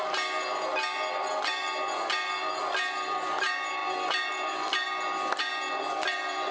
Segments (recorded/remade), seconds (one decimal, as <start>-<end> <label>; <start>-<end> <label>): 0.0-6.5 recorded